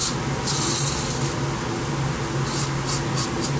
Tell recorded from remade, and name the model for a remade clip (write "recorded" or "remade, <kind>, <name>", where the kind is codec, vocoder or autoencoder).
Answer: recorded